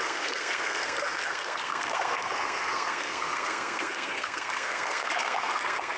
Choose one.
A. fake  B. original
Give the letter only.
A